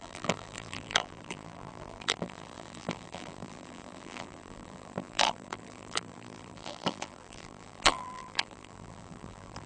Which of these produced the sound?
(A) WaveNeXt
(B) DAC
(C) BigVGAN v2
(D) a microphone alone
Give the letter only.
C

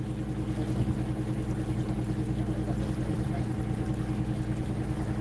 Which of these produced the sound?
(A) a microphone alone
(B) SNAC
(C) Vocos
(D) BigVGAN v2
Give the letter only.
A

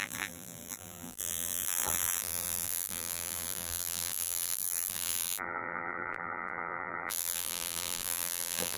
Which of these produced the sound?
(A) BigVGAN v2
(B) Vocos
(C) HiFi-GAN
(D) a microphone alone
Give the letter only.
A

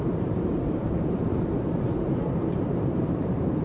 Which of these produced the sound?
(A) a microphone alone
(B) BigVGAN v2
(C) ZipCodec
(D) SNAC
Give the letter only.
B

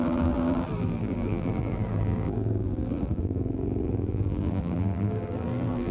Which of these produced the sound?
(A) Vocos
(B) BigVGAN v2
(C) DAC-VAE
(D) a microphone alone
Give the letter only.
B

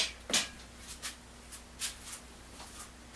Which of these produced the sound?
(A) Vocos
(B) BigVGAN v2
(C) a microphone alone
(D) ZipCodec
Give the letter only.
C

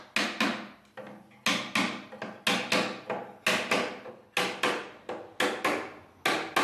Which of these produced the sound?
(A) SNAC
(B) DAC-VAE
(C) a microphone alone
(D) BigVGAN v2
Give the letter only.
C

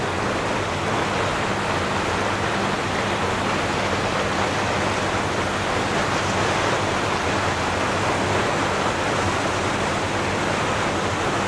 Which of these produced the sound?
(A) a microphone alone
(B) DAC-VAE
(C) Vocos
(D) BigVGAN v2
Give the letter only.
A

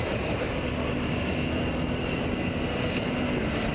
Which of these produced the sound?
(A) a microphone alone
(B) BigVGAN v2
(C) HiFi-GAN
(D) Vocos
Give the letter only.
A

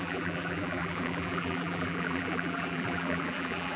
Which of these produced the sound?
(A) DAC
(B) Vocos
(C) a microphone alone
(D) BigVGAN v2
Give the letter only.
D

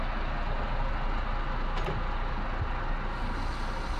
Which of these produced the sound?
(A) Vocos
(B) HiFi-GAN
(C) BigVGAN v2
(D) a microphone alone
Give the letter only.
D